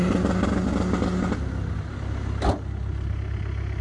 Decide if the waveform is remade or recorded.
recorded